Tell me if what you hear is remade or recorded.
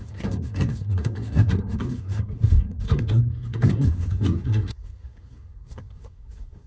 remade